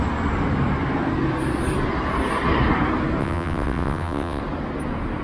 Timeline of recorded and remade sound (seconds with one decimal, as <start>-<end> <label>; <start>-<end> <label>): 0.0-3.2 recorded; 3.2-4.4 remade; 4.4-5.2 recorded